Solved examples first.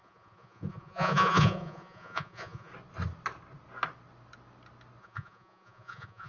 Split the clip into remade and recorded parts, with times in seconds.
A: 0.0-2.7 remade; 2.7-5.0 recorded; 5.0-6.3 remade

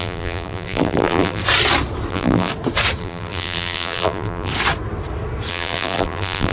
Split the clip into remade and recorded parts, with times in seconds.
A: 0.0-1.4 remade; 1.4-2.1 recorded; 2.1-2.5 remade; 2.5-3.0 recorded; 3.0-4.5 remade; 4.5-5.5 recorded; 5.5-6.5 remade

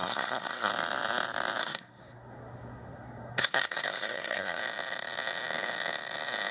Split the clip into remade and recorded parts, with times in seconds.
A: 0.0-0.7 remade; 0.7-1.6 recorded; 1.6-4.6 remade; 4.6-6.5 recorded